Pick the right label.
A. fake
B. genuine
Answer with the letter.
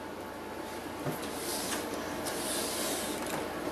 A